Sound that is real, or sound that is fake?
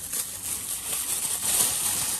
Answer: real